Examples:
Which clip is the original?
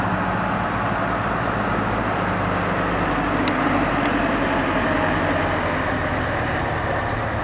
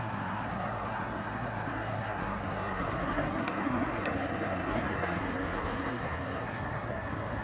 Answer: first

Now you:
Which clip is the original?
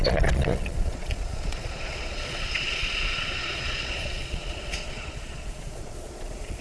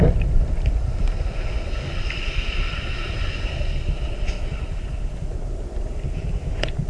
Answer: second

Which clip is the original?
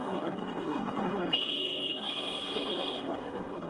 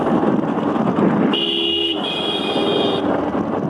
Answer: second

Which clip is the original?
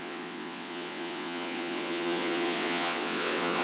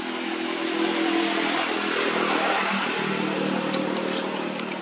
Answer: second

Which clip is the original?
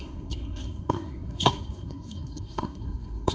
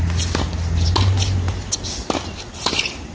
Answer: second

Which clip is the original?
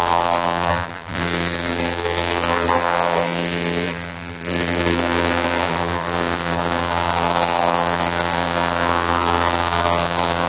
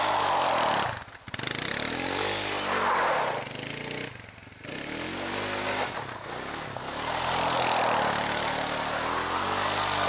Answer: second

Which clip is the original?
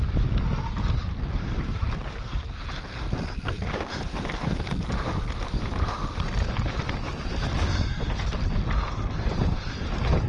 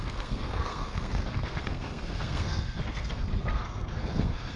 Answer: first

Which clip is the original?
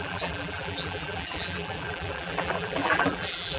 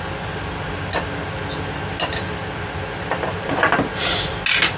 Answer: second